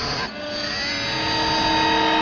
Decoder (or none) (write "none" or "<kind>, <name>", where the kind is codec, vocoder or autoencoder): none